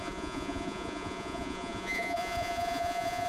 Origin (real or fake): fake